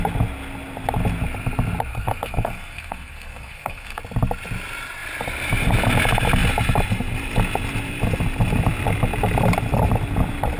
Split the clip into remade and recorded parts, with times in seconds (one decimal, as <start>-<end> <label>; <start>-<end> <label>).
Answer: 0.0-1.9 recorded; 1.9-4.0 remade; 4.0-10.6 recorded